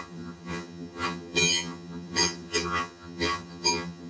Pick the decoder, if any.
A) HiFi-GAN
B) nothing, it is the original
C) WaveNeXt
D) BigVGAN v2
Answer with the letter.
A